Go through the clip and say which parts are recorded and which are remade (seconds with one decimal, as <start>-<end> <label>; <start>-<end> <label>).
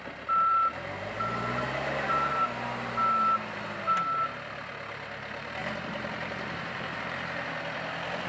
0.0-0.5 recorded; 0.5-2.3 remade; 2.3-5.6 recorded; 5.6-7.0 remade; 7.0-8.3 recorded